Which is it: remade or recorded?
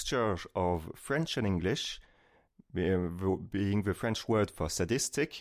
recorded